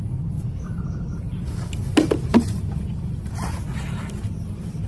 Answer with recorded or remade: recorded